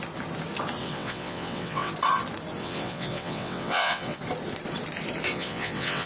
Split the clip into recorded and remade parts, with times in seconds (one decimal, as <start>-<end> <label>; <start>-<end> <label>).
0.0-0.8 recorded; 0.8-1.9 remade; 1.9-2.6 recorded; 2.6-4.2 remade; 4.2-5.3 recorded; 5.3-6.1 remade